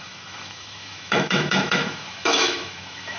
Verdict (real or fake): fake